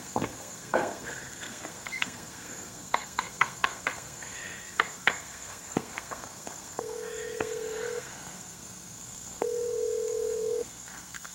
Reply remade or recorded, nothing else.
remade